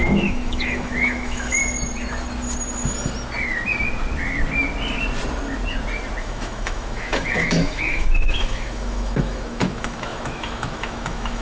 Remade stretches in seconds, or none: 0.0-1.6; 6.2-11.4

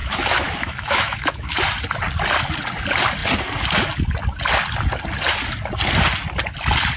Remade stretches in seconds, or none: 0.0-1.6

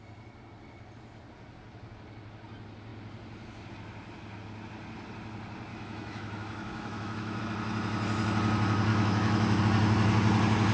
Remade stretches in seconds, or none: 5.7-7.4; 8.9-9.6

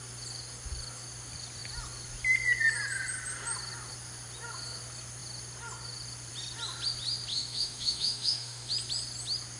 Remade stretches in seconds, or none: 7.3-8.7

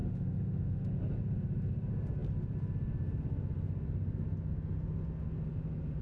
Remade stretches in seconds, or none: 0.0-1.0

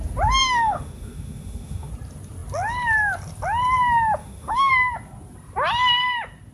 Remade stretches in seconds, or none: 0.4-1.9; 4.2-4.7

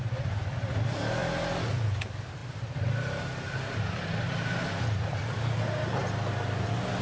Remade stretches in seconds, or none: none